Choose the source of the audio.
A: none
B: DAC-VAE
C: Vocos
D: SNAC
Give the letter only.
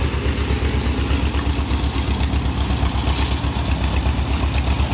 A